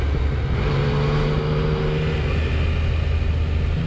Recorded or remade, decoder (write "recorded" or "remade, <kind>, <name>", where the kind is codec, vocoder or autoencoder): recorded